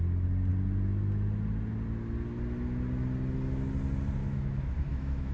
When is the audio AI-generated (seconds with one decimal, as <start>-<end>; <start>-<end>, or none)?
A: 4.2-5.3